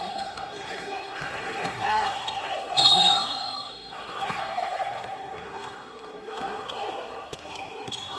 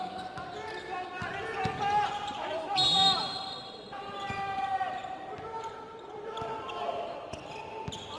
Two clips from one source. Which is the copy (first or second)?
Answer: first